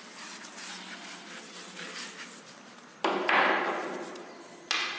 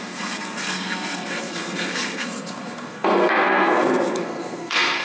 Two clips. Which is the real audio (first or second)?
first